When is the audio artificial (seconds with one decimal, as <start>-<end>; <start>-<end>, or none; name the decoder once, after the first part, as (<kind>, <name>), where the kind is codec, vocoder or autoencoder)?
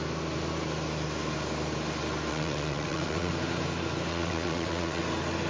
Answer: 2.3-3.3 (vocoder, WaveNeXt); 4.1-5.0